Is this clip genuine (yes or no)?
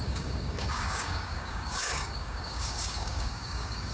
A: no